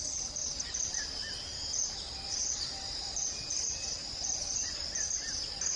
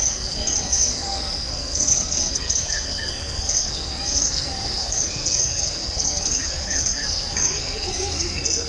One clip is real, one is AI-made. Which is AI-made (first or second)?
second